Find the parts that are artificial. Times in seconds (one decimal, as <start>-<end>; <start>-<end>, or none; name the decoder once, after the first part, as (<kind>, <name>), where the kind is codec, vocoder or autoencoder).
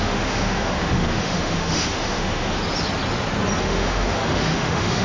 0.0-2.6 (autoencoder, DAC-VAE); 3.6-5.0